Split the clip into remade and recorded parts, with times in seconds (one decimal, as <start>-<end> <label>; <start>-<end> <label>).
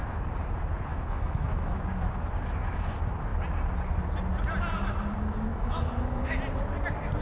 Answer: 0.0-0.9 recorded; 0.9-1.8 remade; 1.8-5.5 recorded; 5.5-6.4 remade; 6.4-7.2 recorded